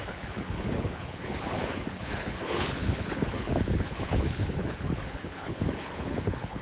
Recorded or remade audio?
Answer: remade